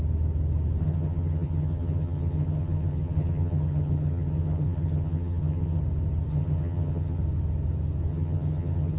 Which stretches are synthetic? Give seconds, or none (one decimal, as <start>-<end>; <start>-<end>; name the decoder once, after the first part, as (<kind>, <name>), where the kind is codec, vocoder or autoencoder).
0.8-5.8 (vocoder, HiFi-GAN); 6.3-7.2; 8.1-9.0